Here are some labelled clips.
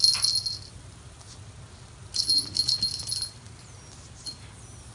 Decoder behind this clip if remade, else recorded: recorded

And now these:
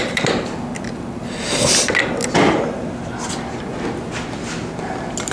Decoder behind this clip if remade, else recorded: recorded